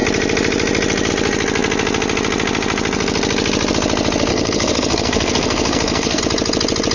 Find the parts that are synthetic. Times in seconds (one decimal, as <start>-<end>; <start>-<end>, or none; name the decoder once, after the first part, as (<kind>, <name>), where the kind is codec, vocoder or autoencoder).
4.3-6.2 (codec, SNAC)